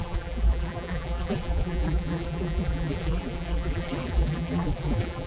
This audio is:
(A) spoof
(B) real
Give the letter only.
A